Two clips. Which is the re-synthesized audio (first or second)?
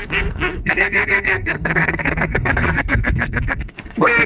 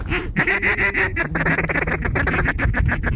first